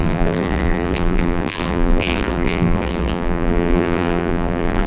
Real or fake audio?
fake